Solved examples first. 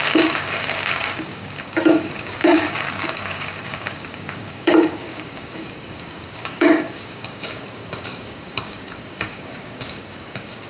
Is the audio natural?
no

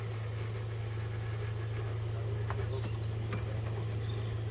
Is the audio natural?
yes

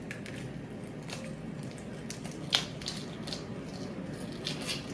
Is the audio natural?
yes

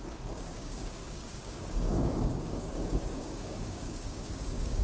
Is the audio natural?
no